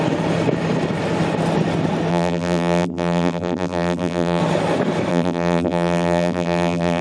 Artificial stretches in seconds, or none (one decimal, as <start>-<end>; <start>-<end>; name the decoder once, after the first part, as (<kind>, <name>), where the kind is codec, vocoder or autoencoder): 2.1-4.4 (vocoder, BigVGAN v2); 5.1-7.0